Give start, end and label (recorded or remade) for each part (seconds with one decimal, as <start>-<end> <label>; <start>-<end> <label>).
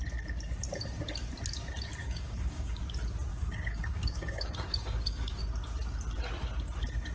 0.0-2.0 recorded; 2.0-2.8 remade; 2.8-3.3 recorded; 3.3-5.4 remade; 5.4-7.1 recorded